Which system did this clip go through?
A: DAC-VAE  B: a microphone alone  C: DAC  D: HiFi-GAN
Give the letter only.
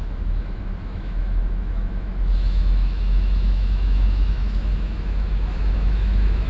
A